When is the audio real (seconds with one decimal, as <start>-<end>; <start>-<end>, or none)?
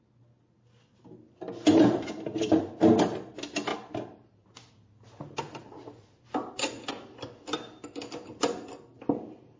0.0-9.6